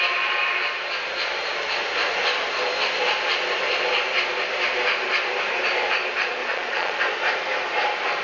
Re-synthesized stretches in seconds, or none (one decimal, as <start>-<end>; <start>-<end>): 6.4-7.0